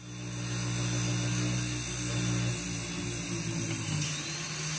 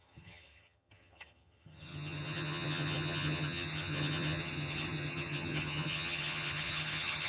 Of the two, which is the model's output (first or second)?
second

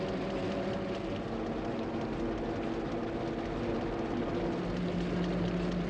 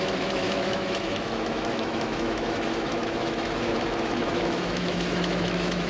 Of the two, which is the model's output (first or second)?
second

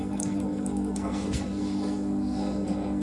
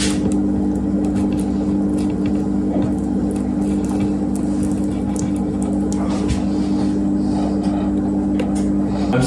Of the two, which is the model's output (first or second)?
first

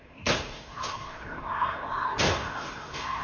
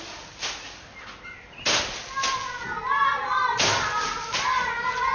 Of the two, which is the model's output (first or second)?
first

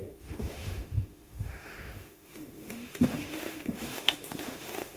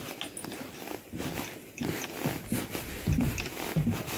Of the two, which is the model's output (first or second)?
first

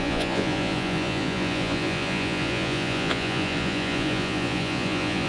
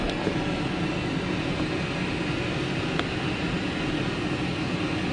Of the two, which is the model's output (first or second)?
first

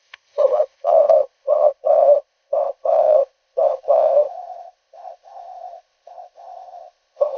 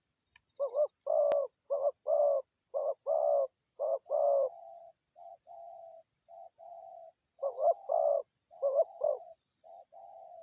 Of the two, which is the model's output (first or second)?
first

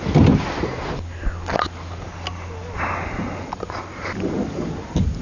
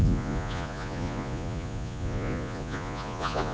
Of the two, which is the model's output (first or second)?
second